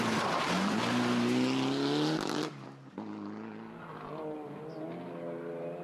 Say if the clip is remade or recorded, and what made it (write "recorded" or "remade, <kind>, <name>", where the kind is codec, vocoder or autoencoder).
recorded